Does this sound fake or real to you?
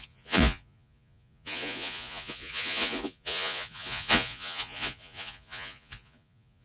fake